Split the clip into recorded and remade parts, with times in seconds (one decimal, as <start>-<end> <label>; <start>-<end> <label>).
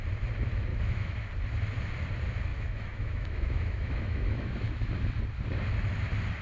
0.0-0.7 recorded; 0.7-1.3 remade; 1.3-2.5 recorded; 2.5-4.9 remade; 4.9-6.4 recorded